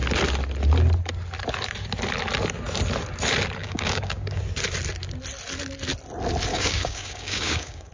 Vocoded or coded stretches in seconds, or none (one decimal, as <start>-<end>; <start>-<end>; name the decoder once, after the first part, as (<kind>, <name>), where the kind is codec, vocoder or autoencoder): 3.6-4.4 (codec, DAC); 6.5-7.9